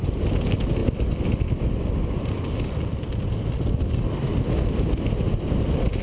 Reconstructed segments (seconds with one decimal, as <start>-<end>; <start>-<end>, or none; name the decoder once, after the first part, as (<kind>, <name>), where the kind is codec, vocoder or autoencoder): none